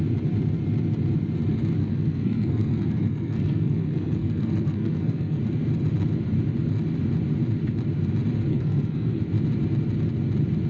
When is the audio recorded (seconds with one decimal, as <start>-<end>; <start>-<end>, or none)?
0.0-1.8; 5.4-8.5; 9.2-10.7